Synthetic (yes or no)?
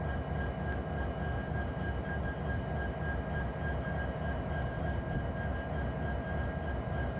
no